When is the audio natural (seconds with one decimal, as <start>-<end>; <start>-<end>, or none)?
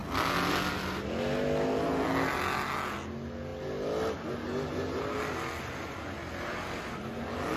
0.0-7.6